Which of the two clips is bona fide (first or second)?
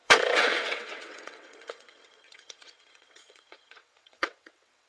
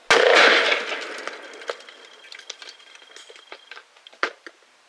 second